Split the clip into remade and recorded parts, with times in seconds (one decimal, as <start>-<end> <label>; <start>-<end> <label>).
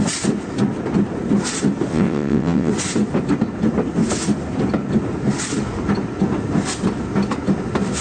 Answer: 0.0-1.9 recorded; 1.9-2.7 remade; 2.7-8.0 recorded